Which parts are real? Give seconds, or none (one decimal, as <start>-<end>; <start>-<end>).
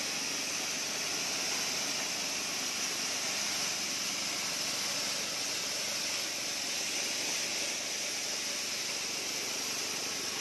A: 0.0-10.4